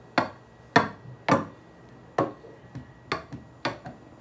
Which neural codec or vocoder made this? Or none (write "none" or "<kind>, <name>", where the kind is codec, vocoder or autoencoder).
none